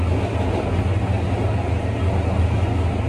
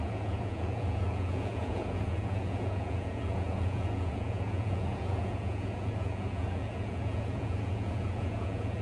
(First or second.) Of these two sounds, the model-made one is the second